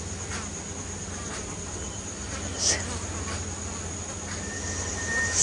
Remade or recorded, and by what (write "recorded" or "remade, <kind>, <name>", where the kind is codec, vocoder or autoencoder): recorded